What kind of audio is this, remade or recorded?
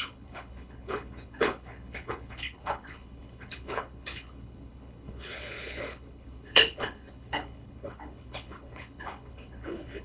remade